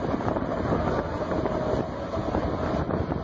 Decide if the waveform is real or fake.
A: real